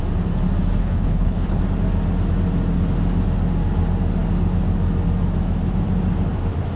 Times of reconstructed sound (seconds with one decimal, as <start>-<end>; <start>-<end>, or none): 0.8-1.6